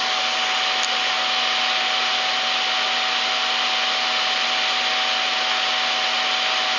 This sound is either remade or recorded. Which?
recorded